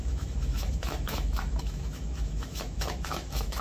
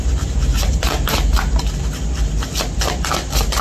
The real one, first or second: second